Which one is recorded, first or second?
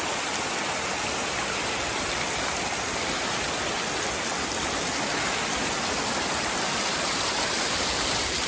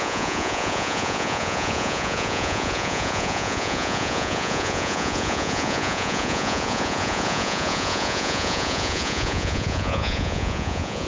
first